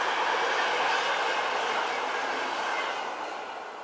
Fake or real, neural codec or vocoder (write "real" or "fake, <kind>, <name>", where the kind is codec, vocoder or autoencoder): real